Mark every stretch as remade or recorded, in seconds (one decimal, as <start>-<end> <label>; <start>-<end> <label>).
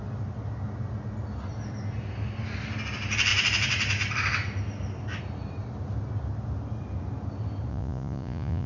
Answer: 0.0-7.7 recorded; 7.7-8.7 remade